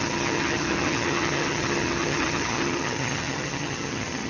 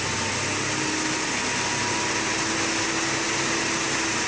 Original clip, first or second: second